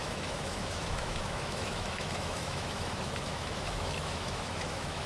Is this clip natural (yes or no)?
no